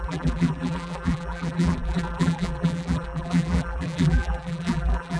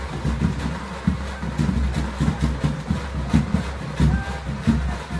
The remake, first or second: first